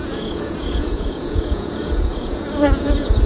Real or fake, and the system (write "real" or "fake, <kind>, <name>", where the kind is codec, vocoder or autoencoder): fake, vocoder, Vocos